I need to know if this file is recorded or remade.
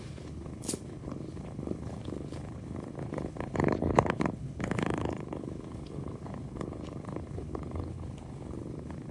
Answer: remade